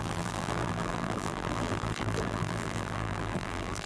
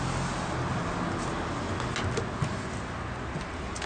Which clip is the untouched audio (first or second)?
second